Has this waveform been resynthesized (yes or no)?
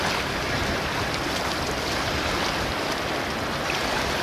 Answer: no